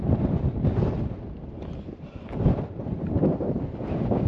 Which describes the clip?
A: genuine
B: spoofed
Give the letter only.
A